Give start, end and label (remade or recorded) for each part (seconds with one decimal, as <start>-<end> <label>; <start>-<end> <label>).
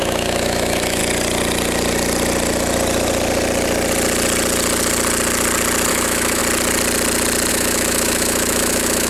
0.0-1.0 remade; 1.0-5.9 recorded; 5.9-6.4 remade; 6.4-7.5 recorded; 7.5-9.1 remade